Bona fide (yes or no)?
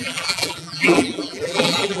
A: no